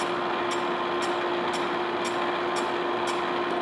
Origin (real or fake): real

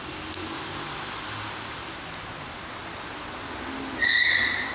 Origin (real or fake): real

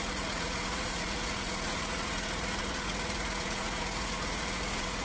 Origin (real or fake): fake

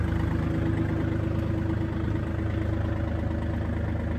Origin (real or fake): real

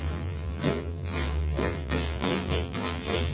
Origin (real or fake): fake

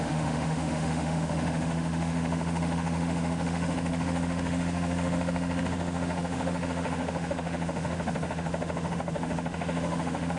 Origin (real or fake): fake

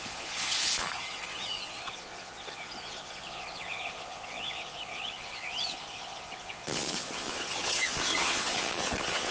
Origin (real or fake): fake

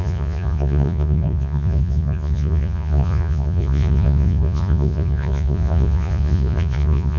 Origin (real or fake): fake